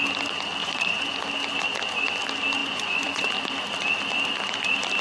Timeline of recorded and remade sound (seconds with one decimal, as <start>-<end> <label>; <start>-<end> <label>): 0.0-0.6 recorded; 0.6-1.2 remade; 1.2-2.6 recorded; 2.6-3.3 remade; 3.3-5.0 recorded